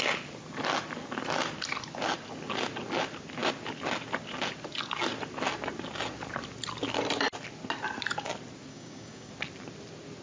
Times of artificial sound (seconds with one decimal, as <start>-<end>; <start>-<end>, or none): 8.7-9.3